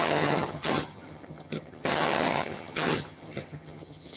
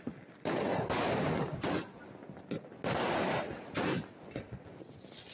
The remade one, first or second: first